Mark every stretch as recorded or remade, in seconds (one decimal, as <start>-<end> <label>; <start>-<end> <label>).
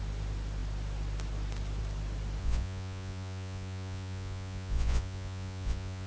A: 0.0-2.4 recorded; 2.4-6.1 remade